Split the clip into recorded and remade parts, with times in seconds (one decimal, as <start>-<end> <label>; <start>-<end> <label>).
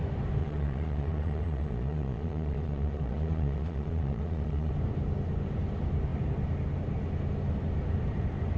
0.0-0.4 recorded; 0.4-4.7 remade; 4.7-8.6 recorded